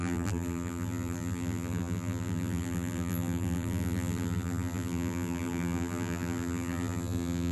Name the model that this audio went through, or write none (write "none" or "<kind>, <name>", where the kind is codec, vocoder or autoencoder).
vocoder, BigVGAN v2